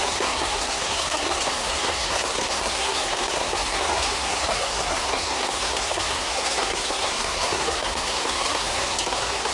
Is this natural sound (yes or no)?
no